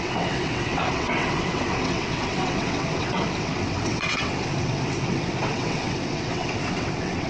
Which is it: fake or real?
fake